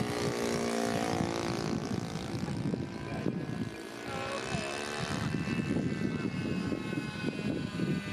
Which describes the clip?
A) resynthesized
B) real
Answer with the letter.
B